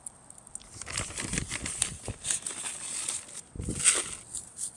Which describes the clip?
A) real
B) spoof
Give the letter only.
A